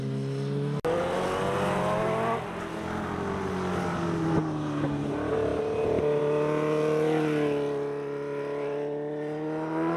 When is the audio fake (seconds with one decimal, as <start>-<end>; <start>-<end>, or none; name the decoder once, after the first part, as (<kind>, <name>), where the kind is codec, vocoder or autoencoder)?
none